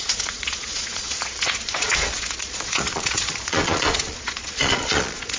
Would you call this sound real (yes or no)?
no